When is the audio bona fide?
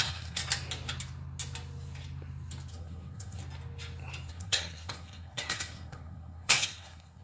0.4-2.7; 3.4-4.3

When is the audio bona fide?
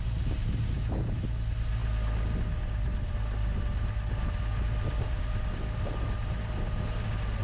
0.0-7.4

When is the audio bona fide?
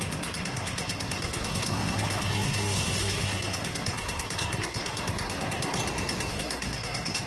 5.8-6.3